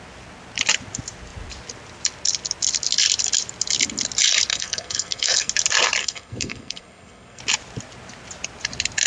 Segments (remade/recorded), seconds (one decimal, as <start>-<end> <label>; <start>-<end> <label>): 0.0-4.5 recorded; 4.5-5.5 remade; 5.5-6.0 recorded; 6.0-7.4 remade; 7.4-9.1 recorded